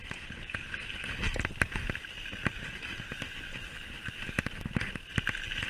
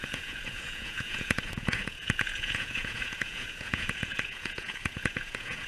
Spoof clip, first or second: second